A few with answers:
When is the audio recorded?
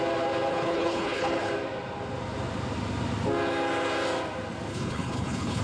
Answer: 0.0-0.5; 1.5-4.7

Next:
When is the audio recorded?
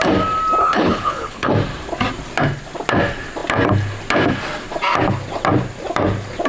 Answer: 0.0-0.6; 1.5-6.5